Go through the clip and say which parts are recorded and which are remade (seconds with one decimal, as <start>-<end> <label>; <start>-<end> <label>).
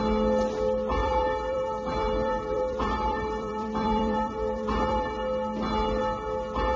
0.0-1.0 recorded; 1.0-5.1 remade; 5.1-6.8 recorded